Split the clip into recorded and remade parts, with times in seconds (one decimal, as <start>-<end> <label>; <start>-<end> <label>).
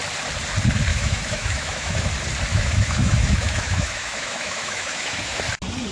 0.0-0.9 recorded; 0.9-2.1 remade; 2.1-2.5 recorded; 2.5-5.4 remade; 5.4-5.9 recorded